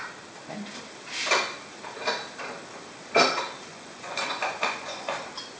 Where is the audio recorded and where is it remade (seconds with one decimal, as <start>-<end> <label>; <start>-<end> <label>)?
0.0-3.7 recorded; 3.7-5.1 remade; 5.1-5.6 recorded